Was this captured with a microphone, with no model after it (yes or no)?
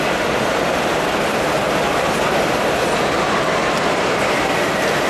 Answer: no